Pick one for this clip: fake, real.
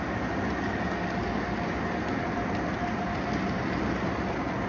real